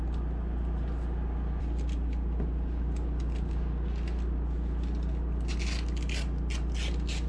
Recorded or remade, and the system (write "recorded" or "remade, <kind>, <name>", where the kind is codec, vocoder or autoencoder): recorded